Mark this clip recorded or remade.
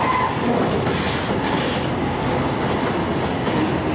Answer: recorded